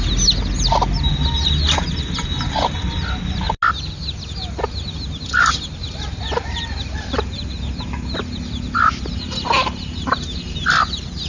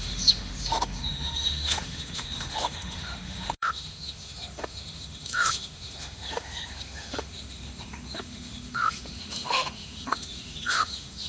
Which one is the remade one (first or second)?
second